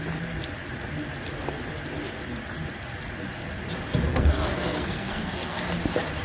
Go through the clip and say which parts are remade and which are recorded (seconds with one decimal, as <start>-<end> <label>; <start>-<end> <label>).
0.0-4.1 recorded; 4.1-5.6 remade; 5.6-6.2 recorded